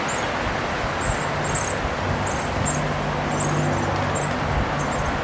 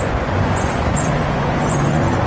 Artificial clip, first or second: second